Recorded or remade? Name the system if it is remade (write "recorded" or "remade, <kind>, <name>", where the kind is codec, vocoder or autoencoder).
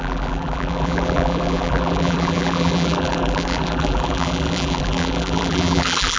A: remade, vocoder, BigVGAN v2